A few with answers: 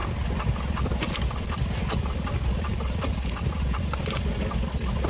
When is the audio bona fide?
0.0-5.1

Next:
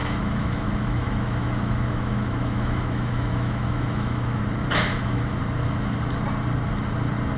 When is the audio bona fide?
4.4-4.9; 5.4-7.4

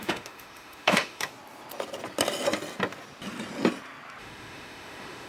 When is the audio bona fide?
1.3-4.2

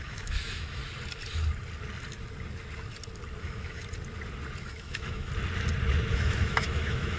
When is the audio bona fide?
0.8-3.4; 3.8-4.6; 5.3-6.1

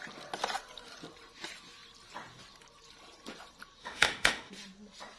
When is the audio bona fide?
0.0-3.8; 4.5-5.2

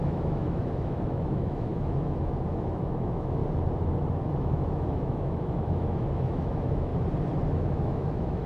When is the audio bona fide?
3.4-4.1; 6.9-7.5

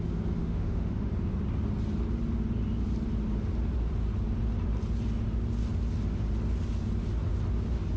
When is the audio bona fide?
0.0-0.4; 1.1-8.0

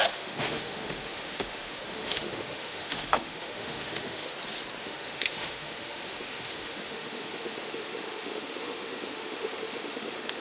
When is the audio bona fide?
4.3-4.8